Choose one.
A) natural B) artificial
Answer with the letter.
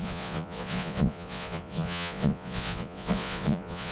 B